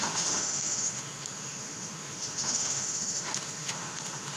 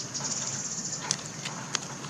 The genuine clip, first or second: second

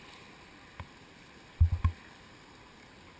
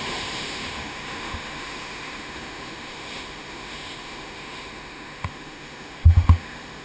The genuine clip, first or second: first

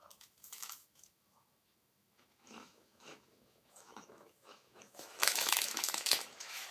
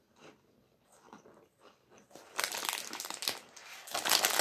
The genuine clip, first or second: second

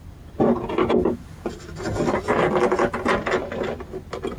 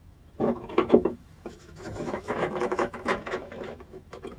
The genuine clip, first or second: first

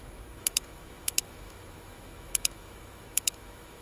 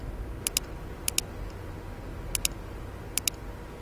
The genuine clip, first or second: second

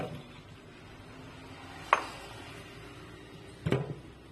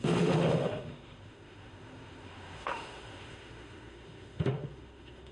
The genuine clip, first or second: first